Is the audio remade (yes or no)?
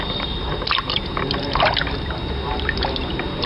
no